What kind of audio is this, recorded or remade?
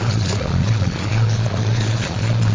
remade